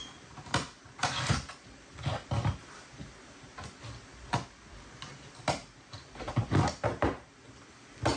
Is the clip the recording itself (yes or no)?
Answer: yes